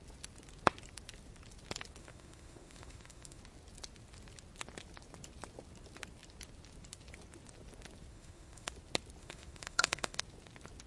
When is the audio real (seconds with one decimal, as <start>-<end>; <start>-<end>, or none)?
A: 0.0-2.0; 3.4-8.1; 8.7-9.2; 10.2-10.9